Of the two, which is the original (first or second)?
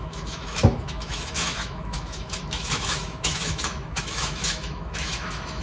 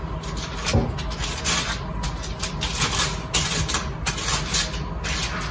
second